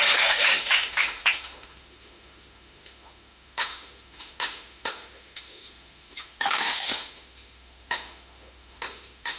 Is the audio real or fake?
fake